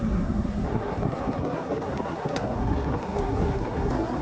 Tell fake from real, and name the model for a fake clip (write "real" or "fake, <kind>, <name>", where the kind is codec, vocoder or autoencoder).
fake, codec, SNAC